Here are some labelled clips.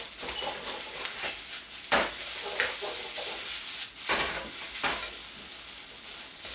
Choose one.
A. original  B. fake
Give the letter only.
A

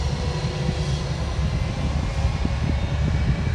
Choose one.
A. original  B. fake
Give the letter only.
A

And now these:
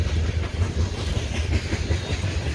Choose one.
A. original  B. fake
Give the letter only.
A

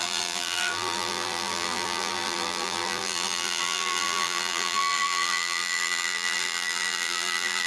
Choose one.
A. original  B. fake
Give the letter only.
B